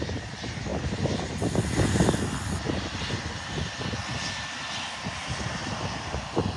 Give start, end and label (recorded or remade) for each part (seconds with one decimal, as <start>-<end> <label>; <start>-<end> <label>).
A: 0.0-6.6 recorded

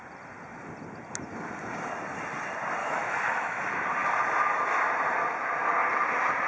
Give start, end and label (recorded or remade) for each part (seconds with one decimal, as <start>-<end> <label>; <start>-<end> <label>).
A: 0.0-2.8 recorded; 2.8-3.6 remade; 3.6-6.5 recorded

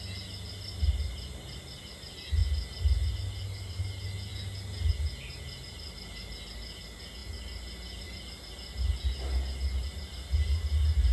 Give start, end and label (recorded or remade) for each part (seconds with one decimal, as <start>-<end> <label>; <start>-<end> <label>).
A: 0.0-11.1 recorded

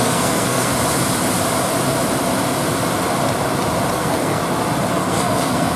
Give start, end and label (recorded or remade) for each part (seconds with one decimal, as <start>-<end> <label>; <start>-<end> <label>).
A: 0.0-0.7 remade; 0.7-3.9 recorded; 3.9-4.4 remade; 4.4-4.9 recorded; 4.9-5.8 remade

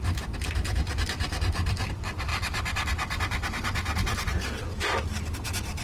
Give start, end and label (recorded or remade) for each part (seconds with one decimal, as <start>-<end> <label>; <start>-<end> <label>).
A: 0.0-0.8 recorded; 0.8-1.4 remade; 1.4-2.3 recorded; 2.3-4.7 remade; 4.7-5.8 recorded

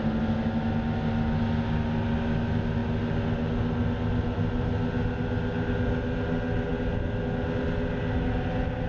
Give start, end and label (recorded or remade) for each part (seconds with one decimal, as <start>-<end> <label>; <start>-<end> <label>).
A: 0.0-8.9 recorded